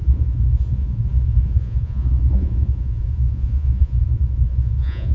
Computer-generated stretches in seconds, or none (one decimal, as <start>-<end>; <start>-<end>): 0.0-5.1